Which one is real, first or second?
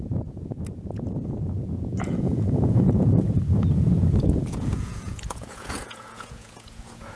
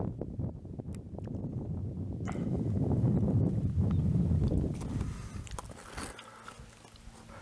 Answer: second